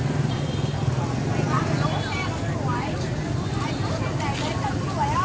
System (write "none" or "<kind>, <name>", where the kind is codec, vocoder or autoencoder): none